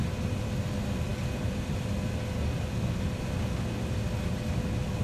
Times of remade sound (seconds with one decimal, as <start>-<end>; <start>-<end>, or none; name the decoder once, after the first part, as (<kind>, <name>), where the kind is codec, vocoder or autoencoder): none